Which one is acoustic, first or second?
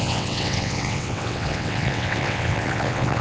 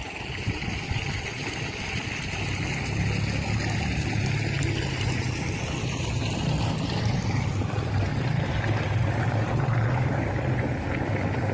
second